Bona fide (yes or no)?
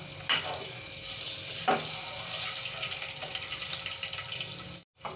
yes